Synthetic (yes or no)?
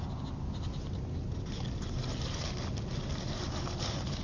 no